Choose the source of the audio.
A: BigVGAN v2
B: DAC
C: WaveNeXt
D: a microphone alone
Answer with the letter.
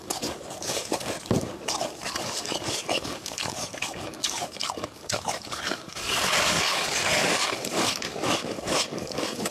B